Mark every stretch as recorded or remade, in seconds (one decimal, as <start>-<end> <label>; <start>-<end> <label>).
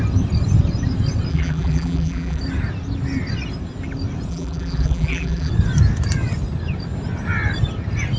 0.0-1.3 recorded; 1.3-2.4 remade; 2.4-4.3 recorded; 4.3-5.5 remade; 5.5-8.2 recorded